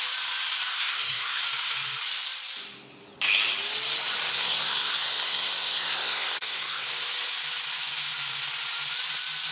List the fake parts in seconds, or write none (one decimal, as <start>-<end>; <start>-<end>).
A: 0.7-1.4; 4.3-6.9